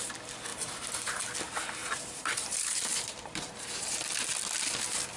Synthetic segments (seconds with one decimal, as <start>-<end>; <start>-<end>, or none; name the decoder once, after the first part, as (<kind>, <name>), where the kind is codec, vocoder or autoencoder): 0.5-1.2 (vocoder, BigVGAN v2); 1.8-4.0